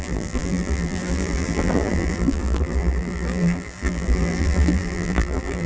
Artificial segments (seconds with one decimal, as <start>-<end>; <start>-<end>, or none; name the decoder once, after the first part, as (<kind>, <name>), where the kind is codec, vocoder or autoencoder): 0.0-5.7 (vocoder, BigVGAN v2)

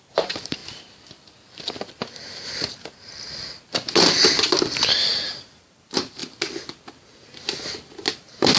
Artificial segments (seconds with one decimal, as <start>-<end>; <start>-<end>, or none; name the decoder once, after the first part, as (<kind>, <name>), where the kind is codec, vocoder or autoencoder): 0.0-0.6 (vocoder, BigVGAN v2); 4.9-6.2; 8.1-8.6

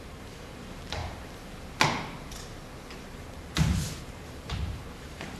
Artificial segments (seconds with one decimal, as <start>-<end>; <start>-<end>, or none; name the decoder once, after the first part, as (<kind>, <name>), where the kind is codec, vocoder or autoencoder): 0.0-1.0 (vocoder, BigVGAN v2); 4.0-5.4

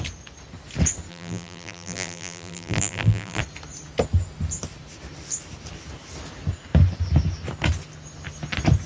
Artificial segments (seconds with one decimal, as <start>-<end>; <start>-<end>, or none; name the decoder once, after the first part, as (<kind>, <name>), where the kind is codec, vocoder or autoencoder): 1.1-3.4 (vocoder, BigVGAN v2)

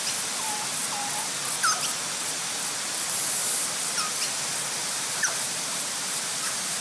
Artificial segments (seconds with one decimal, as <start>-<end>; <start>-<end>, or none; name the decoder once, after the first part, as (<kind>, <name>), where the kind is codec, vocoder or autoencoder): 0.0-0.8 (vocoder, BigVGAN v2); 4.9-6.8

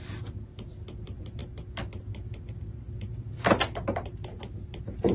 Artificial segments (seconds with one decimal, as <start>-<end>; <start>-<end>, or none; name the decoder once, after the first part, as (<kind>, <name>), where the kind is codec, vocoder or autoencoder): none